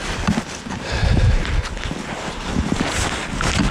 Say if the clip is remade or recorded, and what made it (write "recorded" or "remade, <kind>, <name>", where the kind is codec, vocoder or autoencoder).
recorded